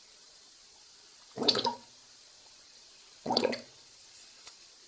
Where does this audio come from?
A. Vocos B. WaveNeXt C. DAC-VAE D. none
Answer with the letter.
A